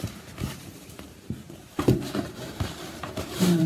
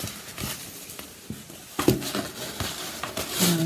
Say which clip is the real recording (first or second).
second